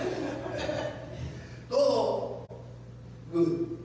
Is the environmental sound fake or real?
real